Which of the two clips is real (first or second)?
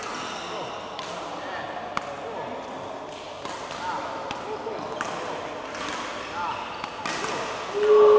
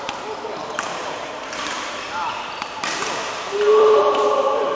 first